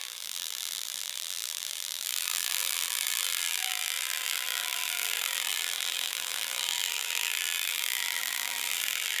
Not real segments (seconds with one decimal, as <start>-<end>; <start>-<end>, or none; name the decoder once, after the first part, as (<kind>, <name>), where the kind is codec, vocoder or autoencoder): 0.0-9.2 (vocoder, BigVGAN v2)